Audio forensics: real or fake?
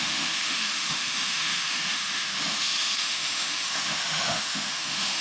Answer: fake